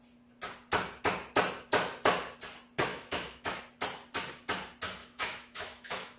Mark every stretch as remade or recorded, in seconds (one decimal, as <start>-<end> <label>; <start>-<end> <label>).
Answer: 0.0-2.9 recorded; 2.9-3.6 remade; 3.6-5.0 recorded; 5.0-6.2 remade

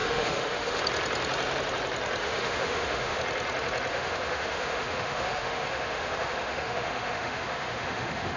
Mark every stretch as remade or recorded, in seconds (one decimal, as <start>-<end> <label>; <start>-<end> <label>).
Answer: 0.0-0.8 remade; 0.8-2.2 recorded; 2.2-3.2 remade; 3.2-3.9 recorded; 3.9-8.4 remade

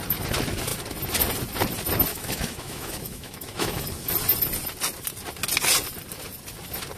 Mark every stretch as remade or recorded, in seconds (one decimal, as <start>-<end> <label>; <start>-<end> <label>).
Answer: 0.0-2.1 recorded; 2.1-4.1 remade; 4.1-7.0 recorded

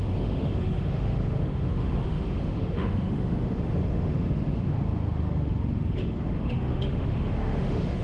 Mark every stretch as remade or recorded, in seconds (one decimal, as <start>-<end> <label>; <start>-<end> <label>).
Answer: 0.0-8.0 remade

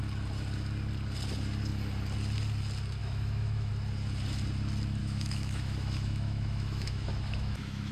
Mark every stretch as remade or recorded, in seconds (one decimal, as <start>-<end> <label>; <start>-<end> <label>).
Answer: 0.0-3.0 recorded; 3.0-3.7 remade; 3.7-5.0 recorded; 5.0-7.9 remade

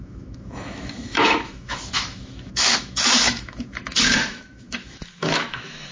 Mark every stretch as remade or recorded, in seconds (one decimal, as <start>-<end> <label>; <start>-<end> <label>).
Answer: 0.0-5.9 remade

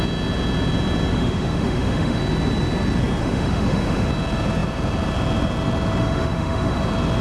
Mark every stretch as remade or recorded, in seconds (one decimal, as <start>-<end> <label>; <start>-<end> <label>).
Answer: 0.0-1.1 recorded; 1.1-2.2 remade; 2.2-3.2 recorded; 3.2-4.1 remade; 4.1-6.0 recorded; 6.0-6.8 remade; 6.8-7.2 recorded

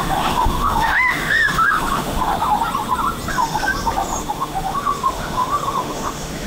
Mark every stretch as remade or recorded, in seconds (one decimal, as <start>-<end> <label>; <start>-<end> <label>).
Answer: 0.0-2.3 remade; 2.3-3.3 recorded; 3.3-3.7 remade; 3.7-4.2 recorded; 4.2-6.5 remade